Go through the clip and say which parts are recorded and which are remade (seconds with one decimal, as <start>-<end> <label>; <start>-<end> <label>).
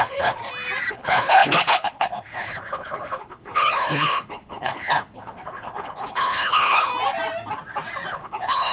0.0-0.4 remade; 0.4-0.9 recorded; 0.9-6.9 remade; 6.9-8.1 recorded; 8.1-8.7 remade